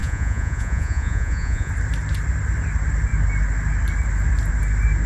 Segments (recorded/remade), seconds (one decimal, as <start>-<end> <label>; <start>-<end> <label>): 0.0-1.7 remade; 1.7-5.1 recorded

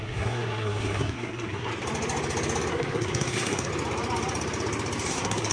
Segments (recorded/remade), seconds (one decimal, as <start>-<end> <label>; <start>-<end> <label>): 0.0-1.7 remade; 1.7-2.7 recorded; 2.7-3.7 remade; 3.7-5.1 recorded; 5.1-5.5 remade

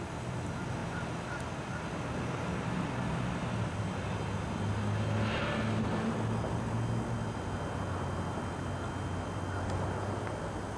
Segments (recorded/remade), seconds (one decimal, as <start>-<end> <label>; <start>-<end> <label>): 0.0-10.8 recorded

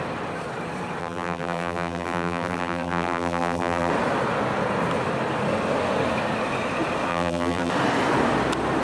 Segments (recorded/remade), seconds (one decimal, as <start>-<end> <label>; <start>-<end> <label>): 0.0-1.0 recorded; 1.0-3.9 remade; 3.9-7.1 recorded; 7.1-7.7 remade; 7.7-8.8 recorded

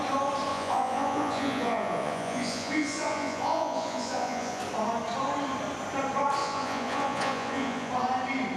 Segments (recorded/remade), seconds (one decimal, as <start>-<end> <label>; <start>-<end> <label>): 0.0-0.5 recorded; 0.5-4.6 remade; 4.6-6.4 recorded; 6.4-7.9 remade; 7.9-8.6 recorded

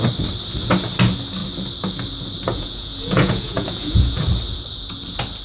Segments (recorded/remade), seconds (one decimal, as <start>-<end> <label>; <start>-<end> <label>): 0.0-2.5 recorded; 2.5-4.3 remade; 4.3-5.4 recorded

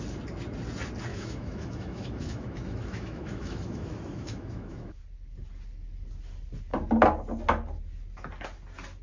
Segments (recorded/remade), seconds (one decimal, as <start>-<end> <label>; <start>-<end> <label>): 0.0-1.1 recorded; 1.1-5.0 remade; 5.0-9.0 recorded